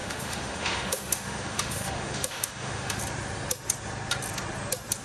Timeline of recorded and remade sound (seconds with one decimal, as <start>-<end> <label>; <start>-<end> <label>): 0.0-3.0 remade; 3.0-5.0 recorded